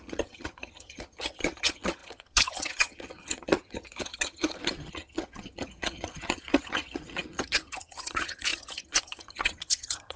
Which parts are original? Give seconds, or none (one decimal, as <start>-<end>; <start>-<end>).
none